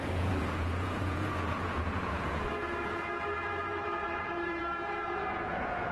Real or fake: fake